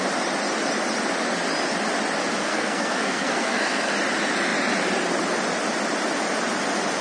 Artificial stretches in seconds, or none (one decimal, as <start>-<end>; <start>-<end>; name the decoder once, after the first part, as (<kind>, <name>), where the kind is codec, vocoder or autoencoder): 2.4-3.9 (codec, SNAC)